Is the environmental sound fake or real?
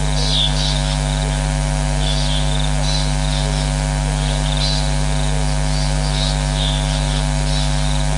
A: real